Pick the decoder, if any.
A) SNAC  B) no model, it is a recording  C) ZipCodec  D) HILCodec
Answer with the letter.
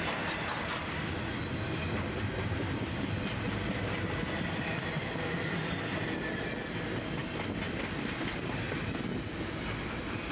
B